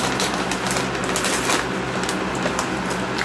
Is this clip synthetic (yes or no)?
no